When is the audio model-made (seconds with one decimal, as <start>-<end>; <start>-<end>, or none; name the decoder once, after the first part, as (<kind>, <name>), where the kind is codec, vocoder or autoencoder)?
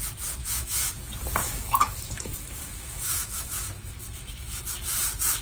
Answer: 0.4-0.9 (autoencoder, DAC-VAE); 1.4-4.6